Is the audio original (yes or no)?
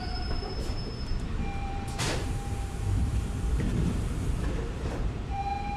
no